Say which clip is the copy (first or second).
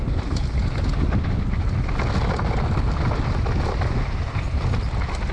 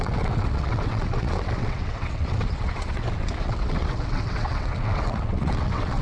second